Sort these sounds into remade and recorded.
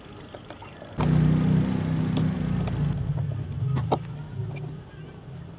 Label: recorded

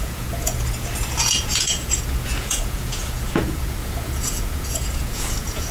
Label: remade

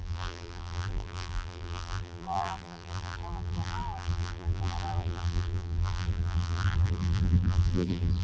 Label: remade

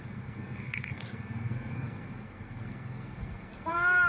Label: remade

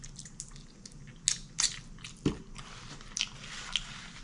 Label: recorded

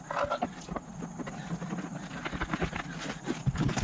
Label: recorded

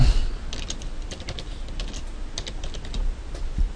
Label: recorded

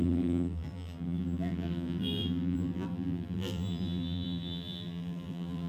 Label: remade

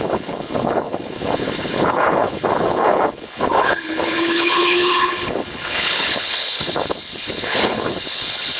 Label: remade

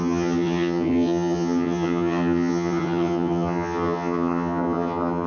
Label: remade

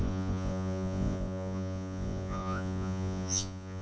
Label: remade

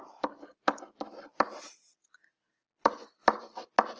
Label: recorded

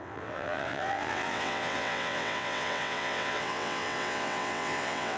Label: remade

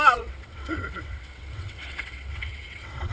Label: remade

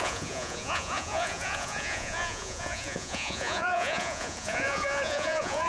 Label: remade